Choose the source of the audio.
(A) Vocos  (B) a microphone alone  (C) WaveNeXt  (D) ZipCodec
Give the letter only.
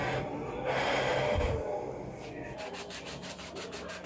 B